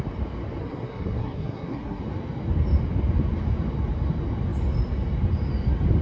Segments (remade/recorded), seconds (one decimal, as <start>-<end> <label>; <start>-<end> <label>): 0.0-0.6 recorded; 0.6-2.0 remade; 2.0-6.0 recorded